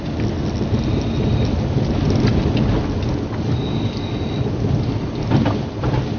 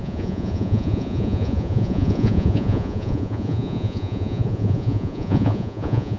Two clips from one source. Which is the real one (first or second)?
first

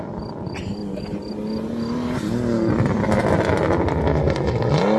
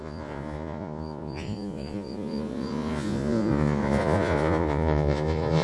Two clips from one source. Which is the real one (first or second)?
first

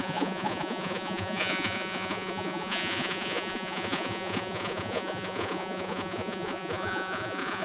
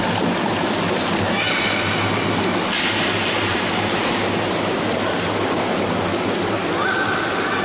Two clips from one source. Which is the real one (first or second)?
second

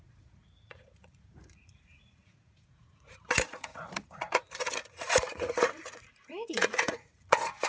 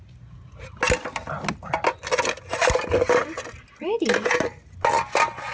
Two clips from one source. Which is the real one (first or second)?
second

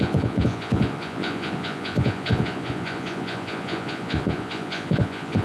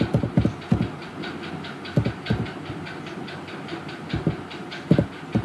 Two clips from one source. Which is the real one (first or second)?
second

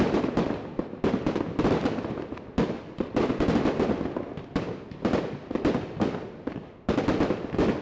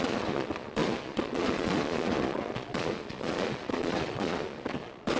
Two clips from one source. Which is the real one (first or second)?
first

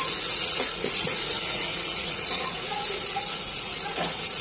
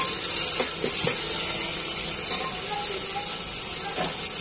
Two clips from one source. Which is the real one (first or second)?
second